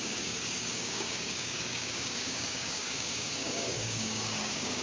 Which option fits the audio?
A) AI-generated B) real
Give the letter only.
A